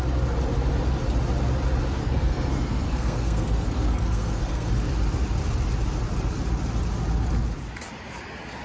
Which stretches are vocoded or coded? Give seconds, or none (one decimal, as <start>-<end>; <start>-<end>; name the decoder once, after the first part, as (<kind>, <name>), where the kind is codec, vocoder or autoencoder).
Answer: 2.0-4.7 (codec, SNAC)

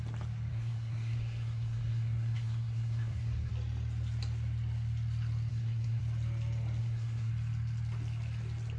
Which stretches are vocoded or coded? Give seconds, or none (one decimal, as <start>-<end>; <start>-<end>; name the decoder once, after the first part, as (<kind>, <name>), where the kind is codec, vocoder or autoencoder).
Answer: 0.5-3.5 (codec, SNAC); 5.5-6.0; 6.8-7.3

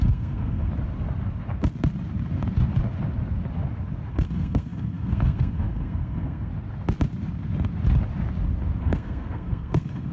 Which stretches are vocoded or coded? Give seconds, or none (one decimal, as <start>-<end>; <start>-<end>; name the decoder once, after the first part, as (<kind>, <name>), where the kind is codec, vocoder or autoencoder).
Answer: 0.0-0.7 (codec, SNAC); 4.1-6.5; 8.8-10.1

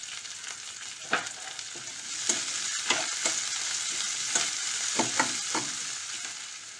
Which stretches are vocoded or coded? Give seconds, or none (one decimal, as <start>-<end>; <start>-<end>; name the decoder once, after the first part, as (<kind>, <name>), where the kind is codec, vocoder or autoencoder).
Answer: none

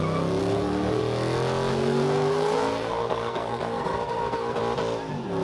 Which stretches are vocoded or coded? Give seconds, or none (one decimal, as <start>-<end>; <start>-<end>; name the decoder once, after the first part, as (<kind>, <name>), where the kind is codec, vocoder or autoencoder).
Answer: 0.4-1.0 (codec, SNAC); 1.7-4.6

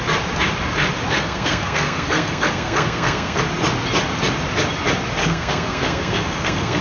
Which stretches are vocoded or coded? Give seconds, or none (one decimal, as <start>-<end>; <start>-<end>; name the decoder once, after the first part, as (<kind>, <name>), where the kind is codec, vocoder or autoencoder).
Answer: 1.1-3.4 (codec, SNAC); 5.2-6.8